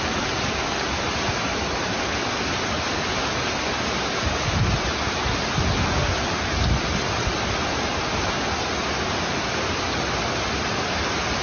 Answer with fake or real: real